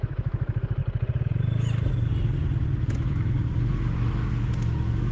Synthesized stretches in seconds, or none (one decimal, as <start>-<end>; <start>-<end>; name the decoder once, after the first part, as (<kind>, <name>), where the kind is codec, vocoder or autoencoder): 0.0-0.8 (autoencoder, DAC-VAE); 2.8-5.1

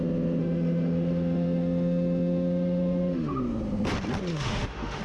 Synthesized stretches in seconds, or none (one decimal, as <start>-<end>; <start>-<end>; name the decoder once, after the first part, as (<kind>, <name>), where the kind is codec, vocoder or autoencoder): 0.4-3.4 (autoencoder, DAC-VAE); 4.3-5.0

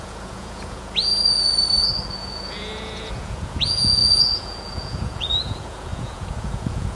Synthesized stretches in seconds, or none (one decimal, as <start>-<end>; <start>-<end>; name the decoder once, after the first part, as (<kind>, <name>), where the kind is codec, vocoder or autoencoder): 0.0-1.1 (vocoder, Vocos); 2.1-7.0

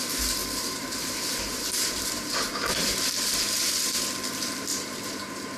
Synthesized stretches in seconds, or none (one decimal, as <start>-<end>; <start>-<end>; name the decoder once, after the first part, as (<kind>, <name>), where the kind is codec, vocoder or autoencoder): 0.4-3.8 (vocoder, BigVGAN v2); 4.7-5.6